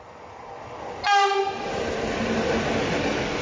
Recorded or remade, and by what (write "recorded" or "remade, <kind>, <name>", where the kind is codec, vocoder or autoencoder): recorded